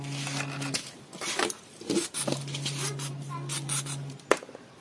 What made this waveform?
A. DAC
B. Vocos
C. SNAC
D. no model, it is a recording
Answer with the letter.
D